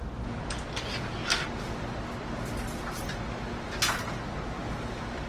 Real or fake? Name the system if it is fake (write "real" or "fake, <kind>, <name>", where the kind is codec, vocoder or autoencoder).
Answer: real